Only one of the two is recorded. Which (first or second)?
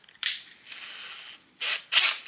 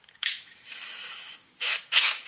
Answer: first